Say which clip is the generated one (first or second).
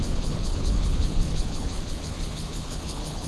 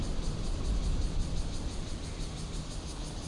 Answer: first